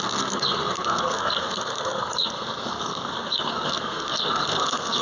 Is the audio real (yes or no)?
no